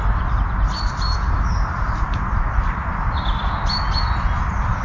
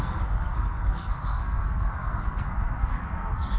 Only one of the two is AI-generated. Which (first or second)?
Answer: second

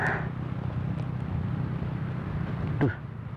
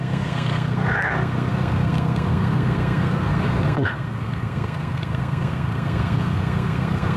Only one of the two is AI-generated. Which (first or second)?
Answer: second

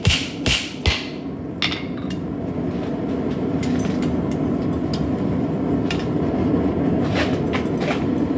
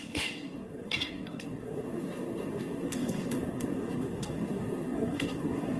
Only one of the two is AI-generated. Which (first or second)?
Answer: second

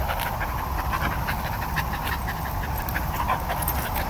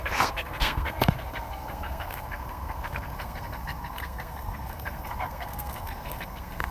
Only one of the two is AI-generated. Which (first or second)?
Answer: second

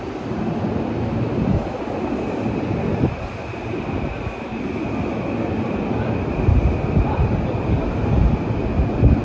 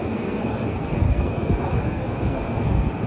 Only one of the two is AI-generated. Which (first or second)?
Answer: second